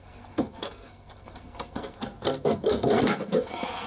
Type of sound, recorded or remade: remade